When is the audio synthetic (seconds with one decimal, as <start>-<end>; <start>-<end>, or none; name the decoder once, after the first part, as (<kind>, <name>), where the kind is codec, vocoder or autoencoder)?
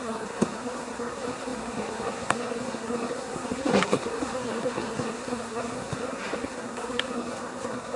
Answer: 0.0-8.0 (codec, SNAC)